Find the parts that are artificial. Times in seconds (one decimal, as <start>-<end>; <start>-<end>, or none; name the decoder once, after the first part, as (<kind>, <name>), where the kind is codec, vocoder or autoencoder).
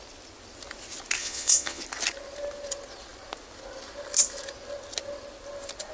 1.2-1.8 (vocoder, Vocos)